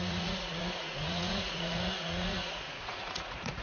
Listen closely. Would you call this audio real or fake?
fake